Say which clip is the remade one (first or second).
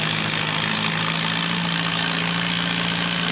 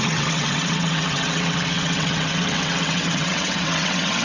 second